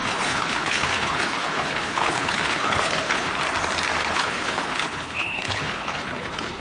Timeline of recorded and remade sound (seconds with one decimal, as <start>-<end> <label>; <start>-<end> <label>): 0.0-3.3 remade; 3.3-4.0 recorded; 4.0-6.6 remade